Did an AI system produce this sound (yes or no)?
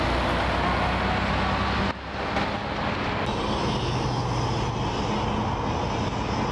no